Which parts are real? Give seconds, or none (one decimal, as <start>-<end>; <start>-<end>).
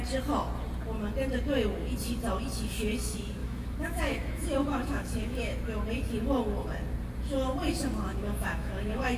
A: 0.0-3.4; 5.6-8.1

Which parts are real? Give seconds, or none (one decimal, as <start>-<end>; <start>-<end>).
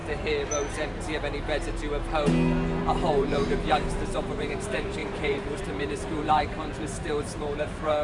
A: 0.0-2.8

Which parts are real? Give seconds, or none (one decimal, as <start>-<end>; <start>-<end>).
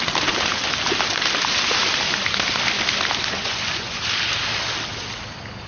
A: 0.0-3.4; 4.0-5.7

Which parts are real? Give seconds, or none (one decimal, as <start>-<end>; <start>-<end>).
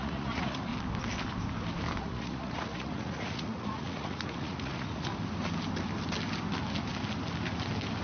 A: 0.7-2.0; 5.1-8.0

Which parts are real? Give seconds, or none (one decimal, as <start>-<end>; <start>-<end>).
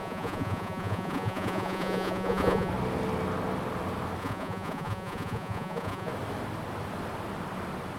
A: 2.7-4.2; 6.1-8.0